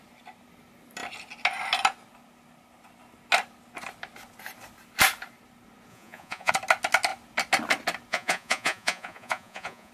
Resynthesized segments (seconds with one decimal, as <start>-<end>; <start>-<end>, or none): 5.9-6.5; 8.1-9.9